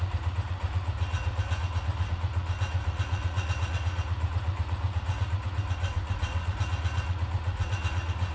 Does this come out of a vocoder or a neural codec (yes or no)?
yes